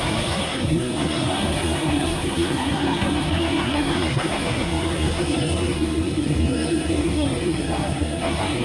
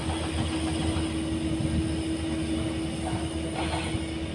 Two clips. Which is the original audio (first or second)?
second